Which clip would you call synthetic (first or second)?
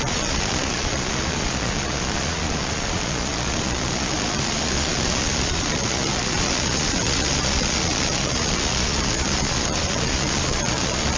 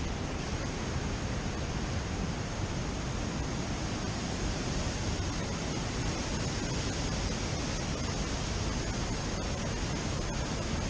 first